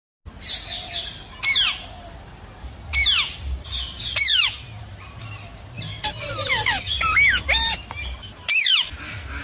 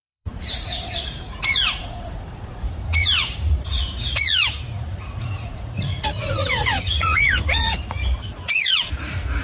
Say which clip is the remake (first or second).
second